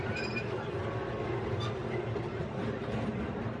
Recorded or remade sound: recorded